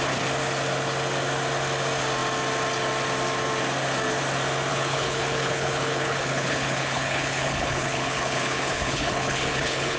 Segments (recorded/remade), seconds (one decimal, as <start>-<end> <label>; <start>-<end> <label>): 0.0-4.7 recorded; 4.7-10.0 remade